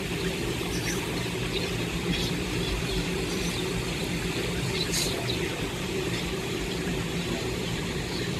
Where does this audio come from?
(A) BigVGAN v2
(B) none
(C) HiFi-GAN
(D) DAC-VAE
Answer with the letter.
A